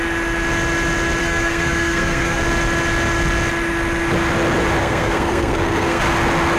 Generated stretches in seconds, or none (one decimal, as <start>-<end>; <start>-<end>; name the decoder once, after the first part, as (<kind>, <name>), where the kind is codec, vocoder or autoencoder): 1.2-2.4 (codec, SNAC); 4.8-6.0

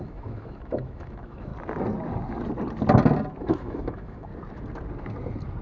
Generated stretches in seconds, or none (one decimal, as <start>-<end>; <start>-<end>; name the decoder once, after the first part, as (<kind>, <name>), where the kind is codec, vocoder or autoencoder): 0.0-1.5 (autoencoder, DAC-VAE); 3.4-4.3

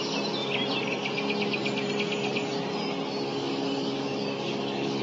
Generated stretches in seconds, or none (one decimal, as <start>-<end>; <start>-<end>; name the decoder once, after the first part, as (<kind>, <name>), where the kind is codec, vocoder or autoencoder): 3.3-5.0 (codec, DAC)

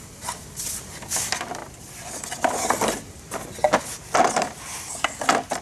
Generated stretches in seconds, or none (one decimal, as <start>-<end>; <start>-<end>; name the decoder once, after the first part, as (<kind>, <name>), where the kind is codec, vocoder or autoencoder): none

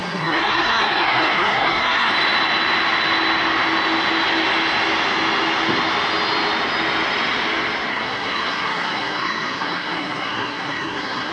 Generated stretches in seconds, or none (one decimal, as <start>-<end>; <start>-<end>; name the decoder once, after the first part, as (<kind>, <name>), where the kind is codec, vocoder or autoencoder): 0.0-2.1 (codec, SNAC); 7.9-11.3